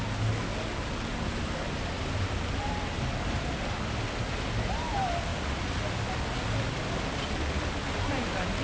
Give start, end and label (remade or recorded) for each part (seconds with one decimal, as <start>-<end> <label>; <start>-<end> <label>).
0.0-8.6 recorded